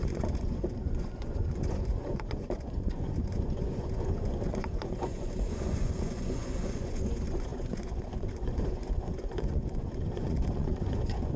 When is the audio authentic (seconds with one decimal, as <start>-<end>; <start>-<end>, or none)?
none